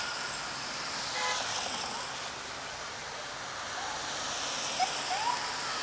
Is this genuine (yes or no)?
yes